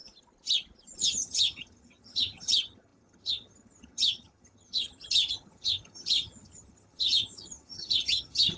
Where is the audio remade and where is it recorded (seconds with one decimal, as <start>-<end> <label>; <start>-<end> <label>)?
0.0-1.0 recorded; 1.0-8.6 remade